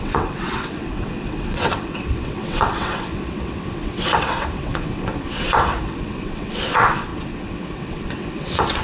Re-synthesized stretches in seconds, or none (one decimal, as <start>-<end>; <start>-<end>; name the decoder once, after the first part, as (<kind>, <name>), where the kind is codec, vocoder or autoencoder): 0.0-8.8 (vocoder, WaveNeXt)